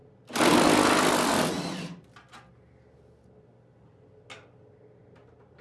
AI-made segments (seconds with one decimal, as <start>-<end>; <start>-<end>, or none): none

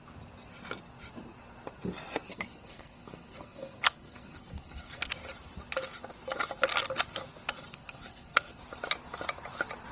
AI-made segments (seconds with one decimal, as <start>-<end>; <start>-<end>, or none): 2.3-5.1; 7.7-8.6

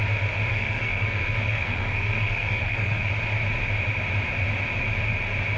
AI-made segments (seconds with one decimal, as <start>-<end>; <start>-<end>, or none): 0.5-3.1